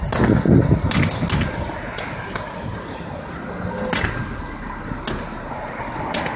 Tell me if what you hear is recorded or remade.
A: recorded